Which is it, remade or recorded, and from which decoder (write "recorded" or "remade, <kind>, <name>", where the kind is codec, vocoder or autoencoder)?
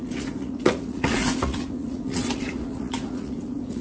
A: remade, vocoder, Vocos